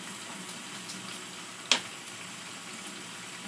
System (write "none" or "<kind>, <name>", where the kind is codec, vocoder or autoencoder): none